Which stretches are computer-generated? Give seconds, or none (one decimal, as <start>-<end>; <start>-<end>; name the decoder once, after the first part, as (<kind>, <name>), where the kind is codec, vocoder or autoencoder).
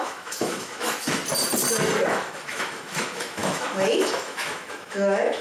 0.0-1.2 (autoencoder, DAC-VAE); 2.1-5.4